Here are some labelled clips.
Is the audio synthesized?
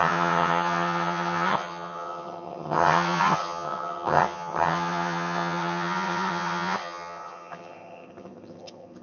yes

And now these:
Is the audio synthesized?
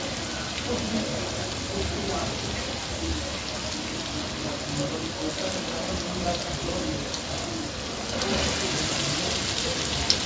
no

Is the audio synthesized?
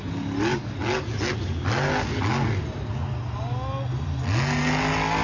no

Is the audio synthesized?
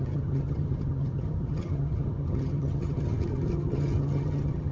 yes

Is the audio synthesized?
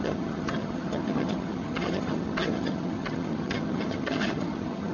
yes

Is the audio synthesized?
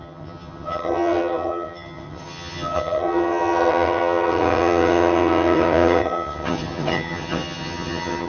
yes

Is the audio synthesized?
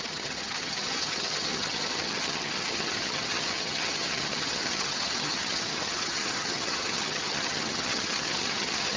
yes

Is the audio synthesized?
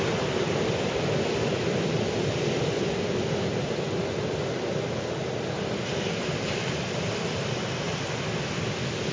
no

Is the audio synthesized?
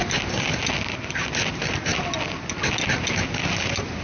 no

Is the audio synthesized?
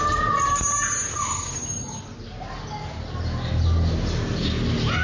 no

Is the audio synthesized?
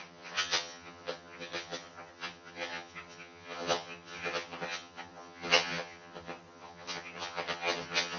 yes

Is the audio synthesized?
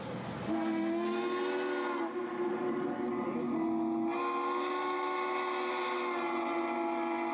no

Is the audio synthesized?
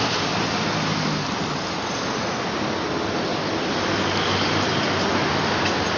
no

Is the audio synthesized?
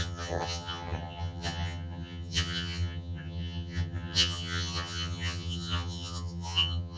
yes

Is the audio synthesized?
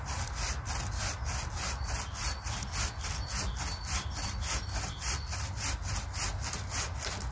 no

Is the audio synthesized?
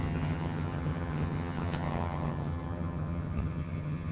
yes